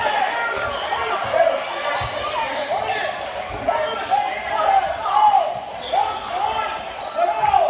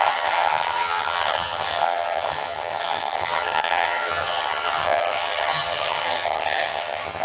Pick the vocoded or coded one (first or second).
second